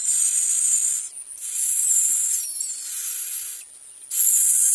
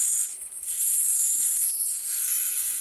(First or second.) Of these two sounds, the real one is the first